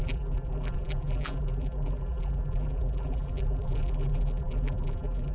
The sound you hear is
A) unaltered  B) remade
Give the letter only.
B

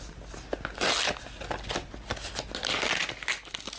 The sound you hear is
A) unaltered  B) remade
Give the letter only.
A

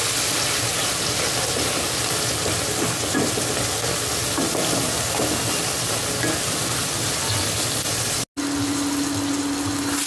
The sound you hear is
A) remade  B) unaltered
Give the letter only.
B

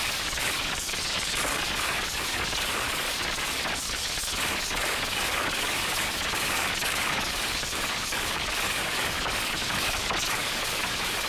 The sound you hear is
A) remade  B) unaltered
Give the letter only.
A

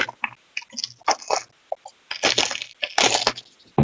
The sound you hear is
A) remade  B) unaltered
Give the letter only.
B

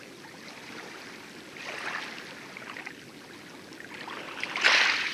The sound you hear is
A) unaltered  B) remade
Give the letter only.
A